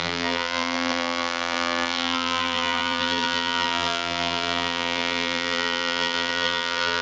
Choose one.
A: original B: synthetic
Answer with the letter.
B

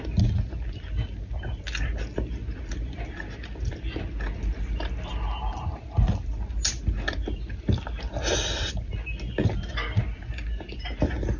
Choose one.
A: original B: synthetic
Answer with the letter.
A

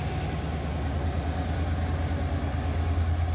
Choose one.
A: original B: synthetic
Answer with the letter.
A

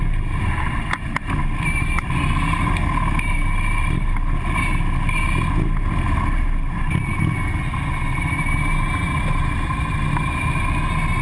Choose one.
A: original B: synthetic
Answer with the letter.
A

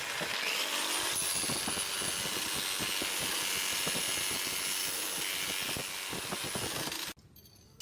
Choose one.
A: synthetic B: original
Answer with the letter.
B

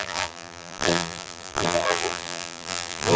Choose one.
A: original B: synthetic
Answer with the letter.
B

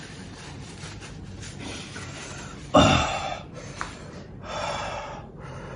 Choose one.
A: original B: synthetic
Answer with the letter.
B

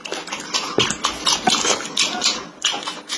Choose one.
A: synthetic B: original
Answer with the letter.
B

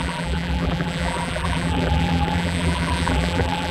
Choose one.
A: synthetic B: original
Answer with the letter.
A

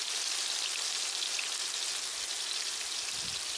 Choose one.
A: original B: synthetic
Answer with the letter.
A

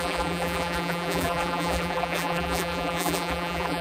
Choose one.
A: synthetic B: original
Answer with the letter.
A